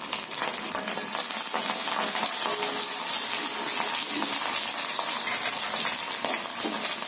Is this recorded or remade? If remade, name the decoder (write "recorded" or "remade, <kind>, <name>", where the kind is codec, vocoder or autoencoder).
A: recorded